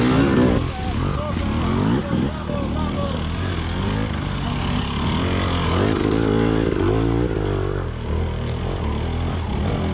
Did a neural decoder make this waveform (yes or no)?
no